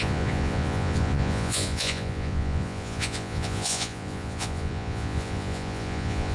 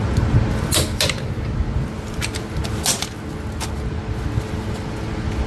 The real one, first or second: second